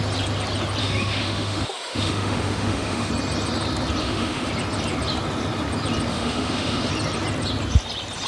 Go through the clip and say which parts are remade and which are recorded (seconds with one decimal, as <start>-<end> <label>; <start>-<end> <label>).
0.0-0.8 recorded; 0.8-3.1 remade; 3.1-4.0 recorded; 4.0-4.5 remade; 4.5-6.1 recorded; 6.1-6.9 remade; 6.9-8.3 recorded